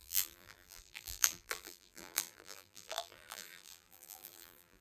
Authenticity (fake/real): fake